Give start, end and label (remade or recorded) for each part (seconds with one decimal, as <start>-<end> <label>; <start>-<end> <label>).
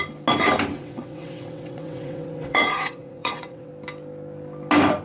0.0-0.7 recorded; 0.7-3.7 remade; 3.7-5.0 recorded